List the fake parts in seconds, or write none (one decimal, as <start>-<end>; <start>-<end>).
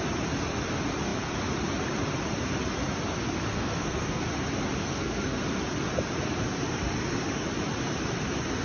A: 3.5-4.2; 4.8-5.4